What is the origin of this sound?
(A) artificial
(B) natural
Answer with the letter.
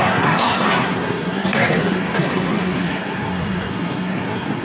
A